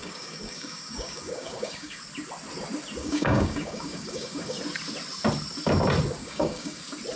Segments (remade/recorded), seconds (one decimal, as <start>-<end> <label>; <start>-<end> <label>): 0.0-2.0 remade; 2.0-3.0 recorded; 3.0-4.6 remade; 4.6-6.2 recorded; 6.2-6.8 remade; 6.8-7.2 recorded

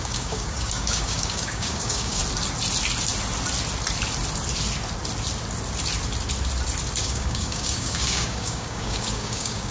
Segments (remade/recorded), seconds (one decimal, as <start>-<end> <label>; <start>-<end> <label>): 0.0-2.2 remade; 2.2-7.0 recorded; 7.0-9.7 remade

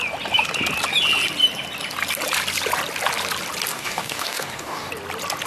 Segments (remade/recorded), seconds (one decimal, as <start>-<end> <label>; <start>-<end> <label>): 0.0-3.7 recorded; 3.7-4.9 remade; 4.9-5.5 recorded

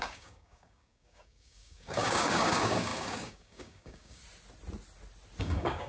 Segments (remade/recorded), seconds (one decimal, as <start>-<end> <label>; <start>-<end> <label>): 0.0-4.2 remade; 4.2-5.4 recorded; 5.4-5.9 remade

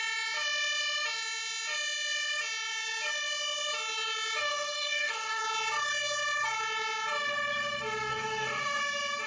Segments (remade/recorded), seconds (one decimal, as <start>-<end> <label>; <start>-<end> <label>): 0.0-4.4 recorded; 4.4-5.4 remade; 5.4-8.1 recorded; 8.1-8.8 remade; 8.8-9.3 recorded

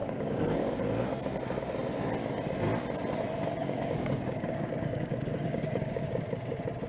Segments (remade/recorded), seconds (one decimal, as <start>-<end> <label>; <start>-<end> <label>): 0.0-0.8 remade; 0.8-3.6 recorded; 3.6-6.2 remade; 6.2-6.9 recorded